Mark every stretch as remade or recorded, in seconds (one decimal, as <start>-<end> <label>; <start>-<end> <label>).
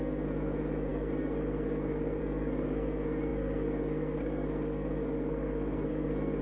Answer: 0.0-6.4 remade